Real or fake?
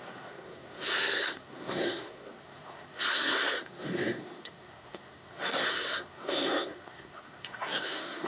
fake